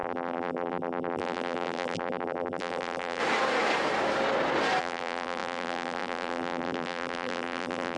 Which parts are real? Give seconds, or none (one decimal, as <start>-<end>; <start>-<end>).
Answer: 3.2-4.8